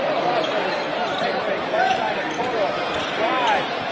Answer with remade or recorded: remade